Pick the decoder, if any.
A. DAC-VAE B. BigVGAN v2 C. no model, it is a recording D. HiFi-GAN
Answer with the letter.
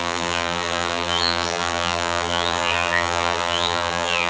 B